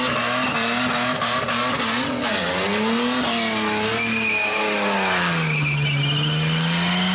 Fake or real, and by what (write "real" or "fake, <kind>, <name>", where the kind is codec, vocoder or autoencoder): real